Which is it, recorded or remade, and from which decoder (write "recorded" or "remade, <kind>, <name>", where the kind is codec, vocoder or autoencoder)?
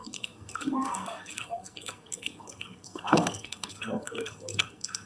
remade, codec, SNAC